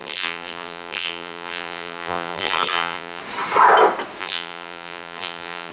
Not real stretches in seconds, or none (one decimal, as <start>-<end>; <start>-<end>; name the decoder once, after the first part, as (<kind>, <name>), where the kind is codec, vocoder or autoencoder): 0.0-3.2 (vocoder, BigVGAN v2); 4.2-5.7